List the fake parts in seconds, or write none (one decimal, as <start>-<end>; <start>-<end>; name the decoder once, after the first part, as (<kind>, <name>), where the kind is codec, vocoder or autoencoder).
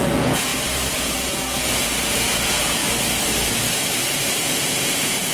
0.0-0.5 (vocoder, Vocos); 1.0-2.8; 4.4-5.3